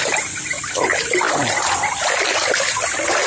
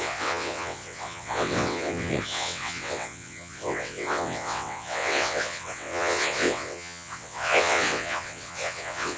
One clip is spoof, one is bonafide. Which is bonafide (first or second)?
first